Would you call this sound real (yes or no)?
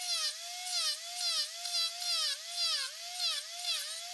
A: yes